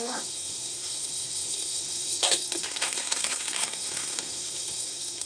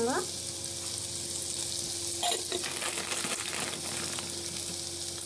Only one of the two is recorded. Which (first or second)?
second